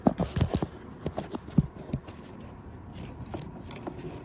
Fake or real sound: real